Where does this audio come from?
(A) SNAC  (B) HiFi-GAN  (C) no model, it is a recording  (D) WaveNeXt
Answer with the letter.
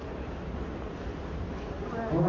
C